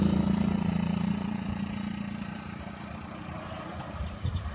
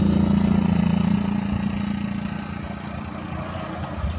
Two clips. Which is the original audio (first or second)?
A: second